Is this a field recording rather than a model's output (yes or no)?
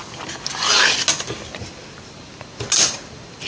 yes